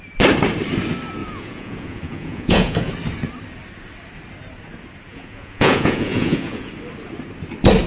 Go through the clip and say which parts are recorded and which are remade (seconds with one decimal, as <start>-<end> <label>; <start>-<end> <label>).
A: 0.0-1.2 recorded; 1.2-2.9 remade; 2.9-5.1 recorded; 5.1-6.7 remade; 6.7-7.9 recorded